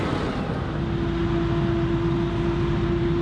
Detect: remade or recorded recorded